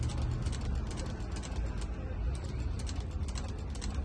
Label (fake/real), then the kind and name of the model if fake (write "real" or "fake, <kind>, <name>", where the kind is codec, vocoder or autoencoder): real